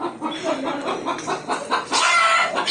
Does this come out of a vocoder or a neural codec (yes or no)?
no